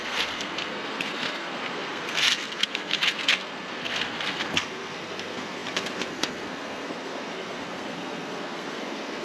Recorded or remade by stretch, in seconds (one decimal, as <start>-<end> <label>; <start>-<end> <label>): 0.0-9.2 remade